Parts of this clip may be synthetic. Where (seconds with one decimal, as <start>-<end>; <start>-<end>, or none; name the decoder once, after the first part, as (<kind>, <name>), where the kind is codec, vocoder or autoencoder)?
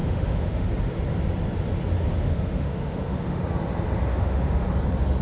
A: 0.0-0.7 (autoencoder, DAC-VAE); 2.1-3.4; 4.1-4.7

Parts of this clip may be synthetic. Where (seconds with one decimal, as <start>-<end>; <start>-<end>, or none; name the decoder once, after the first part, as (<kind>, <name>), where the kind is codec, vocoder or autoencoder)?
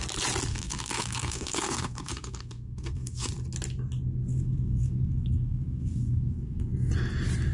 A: 0.5-3.3 (codec, SNAC); 4.3-6.9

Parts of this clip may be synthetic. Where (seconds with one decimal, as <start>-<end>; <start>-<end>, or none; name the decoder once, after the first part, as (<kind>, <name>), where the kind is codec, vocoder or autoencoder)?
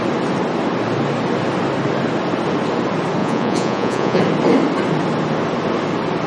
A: 3.2-4.2 (vocoder, Vocos)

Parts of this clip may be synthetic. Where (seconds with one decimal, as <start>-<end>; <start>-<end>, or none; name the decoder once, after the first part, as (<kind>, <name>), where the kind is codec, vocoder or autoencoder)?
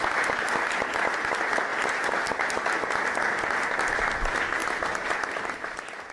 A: none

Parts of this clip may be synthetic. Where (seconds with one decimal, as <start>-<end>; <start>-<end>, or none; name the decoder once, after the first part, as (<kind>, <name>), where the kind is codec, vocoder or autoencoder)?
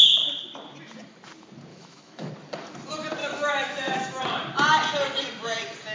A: 1.7-2.3 (autoencoder, DAC-VAE); 3.2-4.2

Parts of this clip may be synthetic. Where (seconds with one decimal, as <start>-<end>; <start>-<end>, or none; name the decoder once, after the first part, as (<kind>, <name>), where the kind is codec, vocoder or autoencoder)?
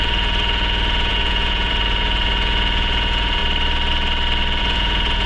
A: 0.0-3.4 (vocoder, Vocos); 4.6-5.3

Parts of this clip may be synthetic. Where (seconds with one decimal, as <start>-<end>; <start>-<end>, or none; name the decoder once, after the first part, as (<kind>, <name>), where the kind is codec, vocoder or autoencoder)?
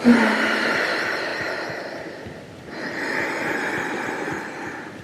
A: none